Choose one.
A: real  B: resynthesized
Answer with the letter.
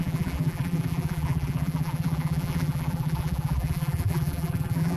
B